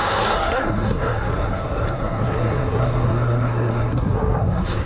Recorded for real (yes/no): no